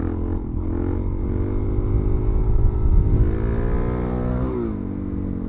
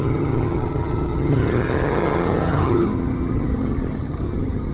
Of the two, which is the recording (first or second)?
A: first